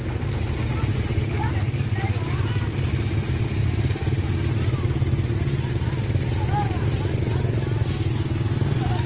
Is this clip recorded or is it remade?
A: recorded